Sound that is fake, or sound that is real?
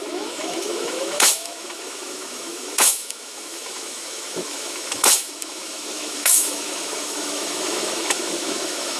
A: fake